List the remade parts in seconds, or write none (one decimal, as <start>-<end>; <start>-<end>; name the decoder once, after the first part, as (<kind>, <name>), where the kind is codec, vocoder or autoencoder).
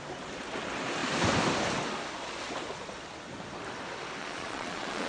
4.2-5.1 (vocoder, Vocos)